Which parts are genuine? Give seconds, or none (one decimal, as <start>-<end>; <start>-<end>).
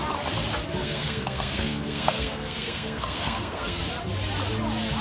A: 0.0-0.8; 3.8-5.0